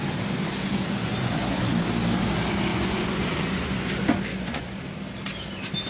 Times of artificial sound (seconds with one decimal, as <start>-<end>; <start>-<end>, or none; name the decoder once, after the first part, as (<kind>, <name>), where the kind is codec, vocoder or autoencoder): 1.0-1.7 (vocoder, Vocos); 2.7-3.9; 4.3-4.8